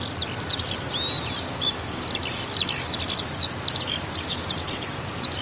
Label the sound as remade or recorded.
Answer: recorded